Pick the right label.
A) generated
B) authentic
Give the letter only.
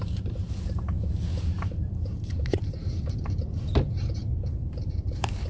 A